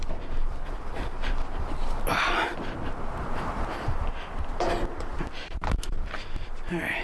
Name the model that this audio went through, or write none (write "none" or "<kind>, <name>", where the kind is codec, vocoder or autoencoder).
none